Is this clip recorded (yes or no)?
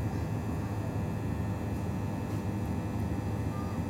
yes